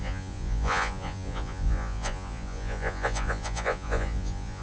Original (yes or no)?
no